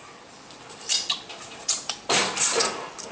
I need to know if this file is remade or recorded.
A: remade